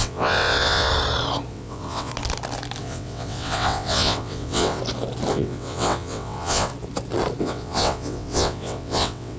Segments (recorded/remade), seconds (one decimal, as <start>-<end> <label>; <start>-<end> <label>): 0.0-0.9 remade; 0.9-1.5 recorded; 1.5-2.1 remade; 2.1-2.8 recorded; 2.8-4.8 remade; 4.8-5.3 recorded; 5.3-6.7 remade; 6.7-7.4 recorded; 7.4-9.4 remade